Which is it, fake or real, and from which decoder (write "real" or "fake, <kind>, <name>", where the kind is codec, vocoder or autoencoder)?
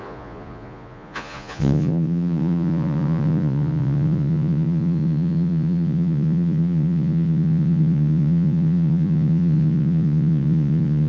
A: fake, vocoder, Vocos